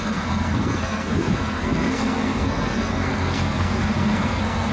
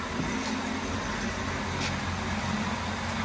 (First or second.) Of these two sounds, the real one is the second